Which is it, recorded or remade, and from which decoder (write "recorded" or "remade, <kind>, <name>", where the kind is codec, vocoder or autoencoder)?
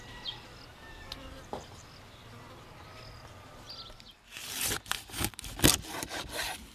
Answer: recorded